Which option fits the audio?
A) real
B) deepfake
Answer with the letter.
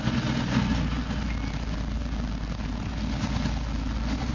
A